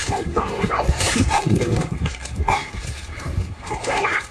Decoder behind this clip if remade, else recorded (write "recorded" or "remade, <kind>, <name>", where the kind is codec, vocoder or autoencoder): remade, codec, SNAC